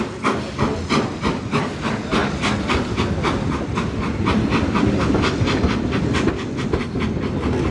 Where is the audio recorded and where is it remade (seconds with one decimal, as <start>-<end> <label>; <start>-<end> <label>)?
0.0-7.7 recorded